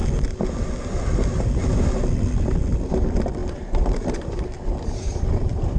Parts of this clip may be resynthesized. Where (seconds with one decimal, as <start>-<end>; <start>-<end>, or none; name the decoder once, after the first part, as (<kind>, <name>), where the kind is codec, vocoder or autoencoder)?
3.4-4.4 (vocoder, BigVGAN v2)

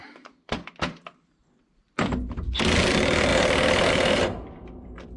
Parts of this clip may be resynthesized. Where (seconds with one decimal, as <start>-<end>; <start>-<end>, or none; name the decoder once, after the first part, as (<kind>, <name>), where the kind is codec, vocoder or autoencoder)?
0.0-3.3 (vocoder, BigVGAN v2); 3.9-5.2

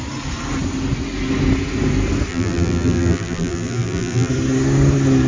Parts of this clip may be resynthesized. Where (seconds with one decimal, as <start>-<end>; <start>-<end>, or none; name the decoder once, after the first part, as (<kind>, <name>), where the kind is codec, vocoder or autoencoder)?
2.3-4.3 (vocoder, BigVGAN v2)

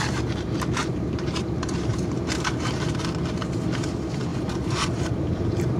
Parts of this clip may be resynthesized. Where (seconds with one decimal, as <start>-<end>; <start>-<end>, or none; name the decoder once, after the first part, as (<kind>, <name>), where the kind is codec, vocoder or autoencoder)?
0.8-3.0 (vocoder, BigVGAN v2); 4.3-5.8

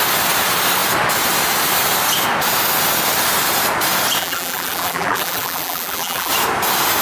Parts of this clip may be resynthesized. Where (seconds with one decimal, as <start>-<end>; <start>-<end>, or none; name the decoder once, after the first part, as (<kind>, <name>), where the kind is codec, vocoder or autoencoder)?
4.2-6.3 (vocoder, BigVGAN v2)